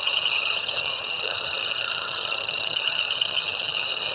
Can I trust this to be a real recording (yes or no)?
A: no